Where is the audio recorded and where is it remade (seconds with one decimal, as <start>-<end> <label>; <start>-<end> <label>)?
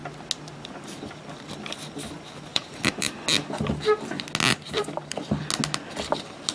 0.0-2.5 recorded; 2.5-3.1 remade; 3.1-4.5 recorded; 4.5-5.4 remade; 5.4-6.5 recorded